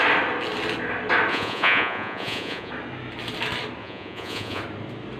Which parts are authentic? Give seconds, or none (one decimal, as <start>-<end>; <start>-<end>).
0.0-1.3; 2.7-3.8; 4.6-5.2